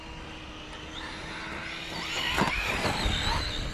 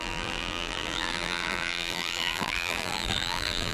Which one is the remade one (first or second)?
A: second